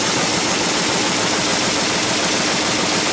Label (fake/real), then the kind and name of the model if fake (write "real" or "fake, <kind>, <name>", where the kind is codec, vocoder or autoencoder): real